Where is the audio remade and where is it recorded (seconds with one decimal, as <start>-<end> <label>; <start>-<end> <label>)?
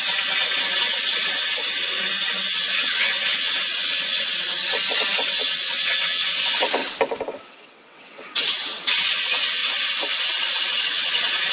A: 0.0-6.8 remade; 6.8-7.4 recorded; 7.4-9.6 remade; 9.6-10.8 recorded; 10.8-11.5 remade